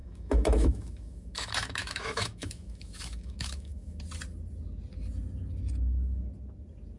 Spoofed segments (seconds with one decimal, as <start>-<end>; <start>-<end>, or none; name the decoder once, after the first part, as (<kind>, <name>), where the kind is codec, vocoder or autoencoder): 0.0-4.0 (autoencoder, DAC-VAE)